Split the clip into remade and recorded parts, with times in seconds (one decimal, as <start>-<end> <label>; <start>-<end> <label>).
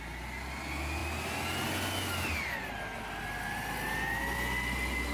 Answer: 0.0-5.1 recorded